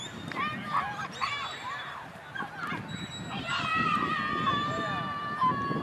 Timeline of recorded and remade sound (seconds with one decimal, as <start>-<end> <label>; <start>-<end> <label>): 0.0-2.2 remade; 2.2-5.8 recorded